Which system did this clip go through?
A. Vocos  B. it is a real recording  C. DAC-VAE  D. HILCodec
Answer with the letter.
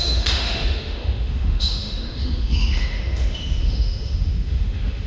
C